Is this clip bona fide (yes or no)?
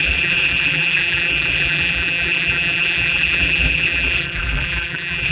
no